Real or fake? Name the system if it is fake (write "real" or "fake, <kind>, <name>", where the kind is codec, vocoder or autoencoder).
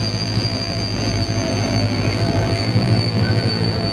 fake, vocoder, BigVGAN v2